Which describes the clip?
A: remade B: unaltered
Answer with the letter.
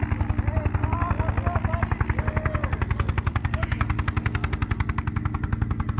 B